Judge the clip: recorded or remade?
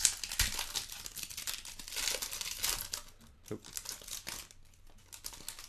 recorded